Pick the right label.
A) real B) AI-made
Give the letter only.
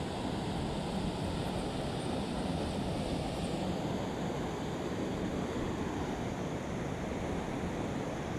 A